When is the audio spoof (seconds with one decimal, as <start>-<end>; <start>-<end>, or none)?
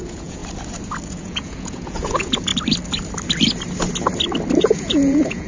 0.0-0.4; 1.1-2.5; 4.6-5.5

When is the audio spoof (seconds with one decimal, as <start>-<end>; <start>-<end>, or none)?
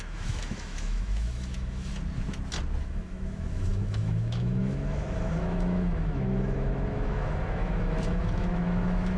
0.0-1.9; 2.8-9.2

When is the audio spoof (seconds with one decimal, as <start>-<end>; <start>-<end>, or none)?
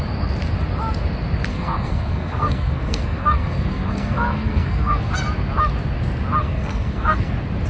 1.5-5.1; 6.4-7.3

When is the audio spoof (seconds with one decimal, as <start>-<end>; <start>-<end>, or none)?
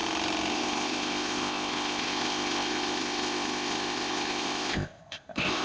0.5-5.6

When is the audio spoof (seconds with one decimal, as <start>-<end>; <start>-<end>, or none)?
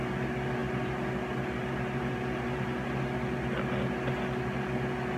none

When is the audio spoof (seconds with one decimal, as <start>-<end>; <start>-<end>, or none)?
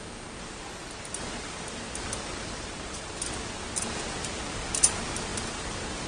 none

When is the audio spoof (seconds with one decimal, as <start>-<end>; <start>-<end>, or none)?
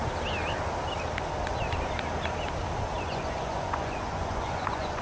3.0-5.0